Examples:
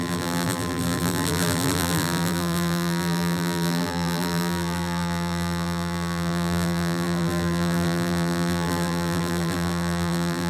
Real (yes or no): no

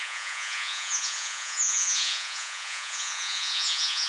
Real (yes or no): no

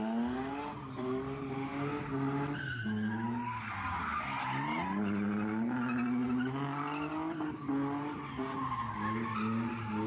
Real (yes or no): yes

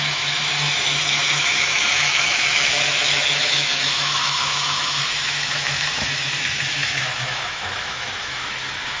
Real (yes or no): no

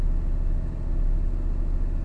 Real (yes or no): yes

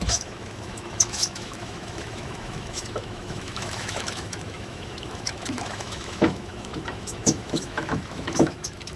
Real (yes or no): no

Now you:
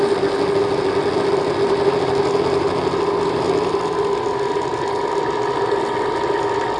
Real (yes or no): yes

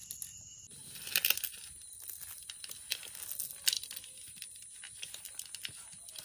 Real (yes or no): yes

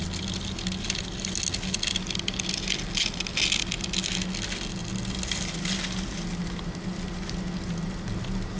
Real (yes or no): yes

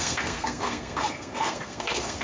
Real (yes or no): no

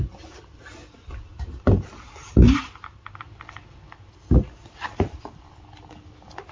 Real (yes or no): yes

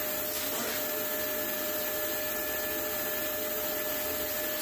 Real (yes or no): yes